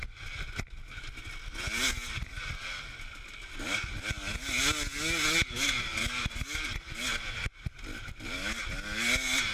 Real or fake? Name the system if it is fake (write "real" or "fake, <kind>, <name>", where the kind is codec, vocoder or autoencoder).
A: real